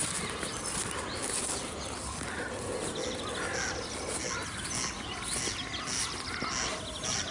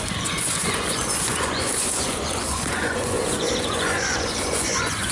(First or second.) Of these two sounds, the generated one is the second